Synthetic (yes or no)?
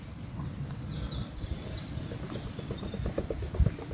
no